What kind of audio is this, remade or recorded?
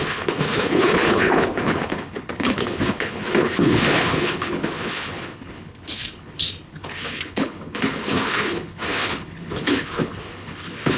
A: remade